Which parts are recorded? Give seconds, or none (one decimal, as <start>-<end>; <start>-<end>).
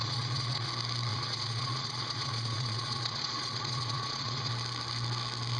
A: 0.7-1.1; 4.5-5.6